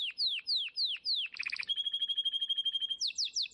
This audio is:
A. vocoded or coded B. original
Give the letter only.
B